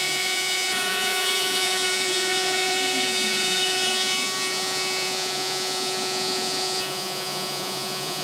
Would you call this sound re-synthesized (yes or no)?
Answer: yes